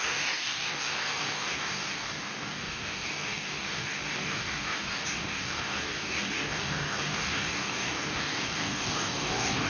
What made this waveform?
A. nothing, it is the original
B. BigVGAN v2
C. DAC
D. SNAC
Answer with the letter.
C